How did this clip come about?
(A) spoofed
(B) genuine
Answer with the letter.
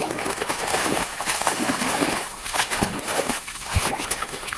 A